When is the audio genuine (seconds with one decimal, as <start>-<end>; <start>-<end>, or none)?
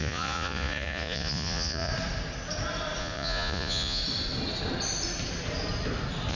1.9-3.0; 4.0-6.3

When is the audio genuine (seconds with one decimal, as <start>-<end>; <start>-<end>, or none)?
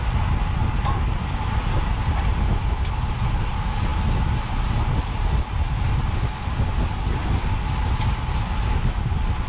0.0-9.5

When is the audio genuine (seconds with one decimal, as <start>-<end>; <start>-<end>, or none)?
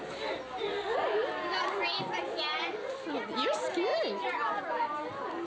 0.0-5.5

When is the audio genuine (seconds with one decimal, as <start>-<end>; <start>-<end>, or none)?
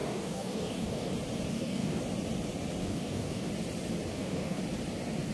1.1-1.5; 2.0-2.8; 3.5-4.1; 4.6-5.3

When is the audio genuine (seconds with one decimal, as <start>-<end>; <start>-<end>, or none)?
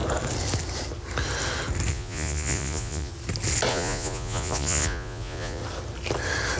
0.0-1.9; 3.1-3.7; 5.6-6.6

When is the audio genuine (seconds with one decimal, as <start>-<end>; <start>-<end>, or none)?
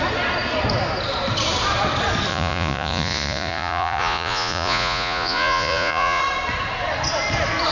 0.0-2.3; 6.2-7.7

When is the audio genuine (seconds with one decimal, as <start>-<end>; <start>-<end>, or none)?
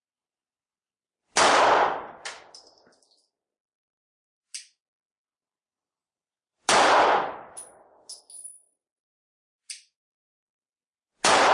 0.0-11.5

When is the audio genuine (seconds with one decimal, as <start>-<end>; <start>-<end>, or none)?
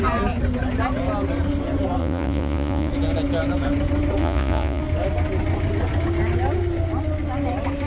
0.0-2.0; 2.9-4.2; 4.8-7.9